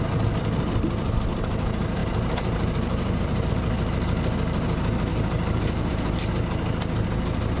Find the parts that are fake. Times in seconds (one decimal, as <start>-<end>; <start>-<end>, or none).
2.0-3.5; 5.1-5.9